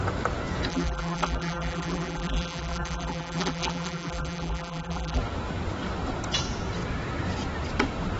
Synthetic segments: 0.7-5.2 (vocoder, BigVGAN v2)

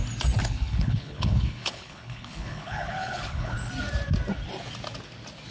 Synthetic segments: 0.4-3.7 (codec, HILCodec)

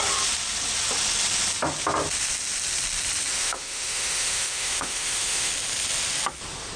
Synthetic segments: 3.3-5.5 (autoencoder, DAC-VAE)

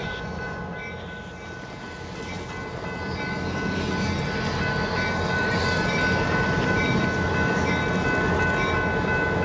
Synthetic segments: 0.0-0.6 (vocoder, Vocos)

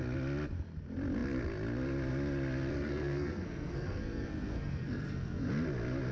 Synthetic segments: 2.7-5.5 (codec, SNAC)

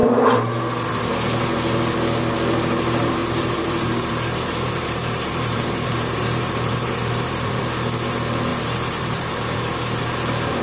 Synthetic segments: 0.0-0.6 (vocoder, BigVGAN v2); 3.2-7.6; 8.5-9.6

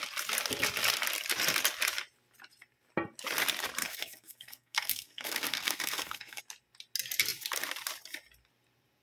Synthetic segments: 3.8-6.4 (codec, SNAC)